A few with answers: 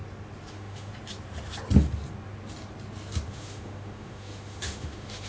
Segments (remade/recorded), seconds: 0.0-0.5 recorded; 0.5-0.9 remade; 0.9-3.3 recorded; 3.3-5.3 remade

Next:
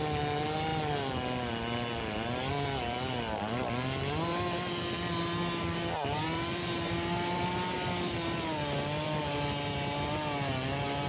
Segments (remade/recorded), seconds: 0.0-11.1 recorded

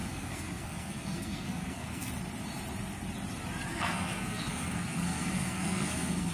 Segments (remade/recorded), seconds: 0.0-2.1 remade; 2.1-3.7 recorded; 3.7-6.3 remade

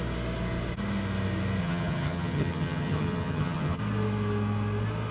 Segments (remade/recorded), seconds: 0.0-1.6 recorded; 1.6-3.8 remade; 3.8-5.1 recorded

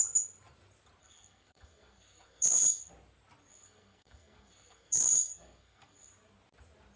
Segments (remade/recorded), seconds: 0.0-1.0 recorded; 1.0-2.9 remade; 2.9-3.5 recorded; 3.5-6.1 remade; 6.1-7.0 recorded

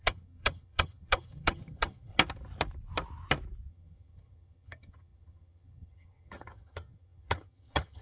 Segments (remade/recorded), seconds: 0.0-2.1 remade; 2.1-3.7 recorded; 3.7-8.0 remade